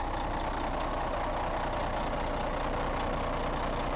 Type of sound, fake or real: real